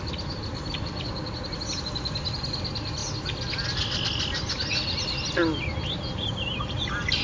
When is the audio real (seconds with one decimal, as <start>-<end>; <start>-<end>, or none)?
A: 0.0-7.2